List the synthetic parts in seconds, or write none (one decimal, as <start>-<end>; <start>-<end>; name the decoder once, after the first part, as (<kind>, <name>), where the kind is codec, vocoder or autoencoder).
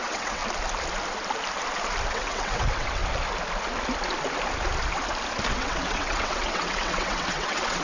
0.0-0.4 (vocoder, WaveNeXt); 2.1-3.0; 5.5-7.8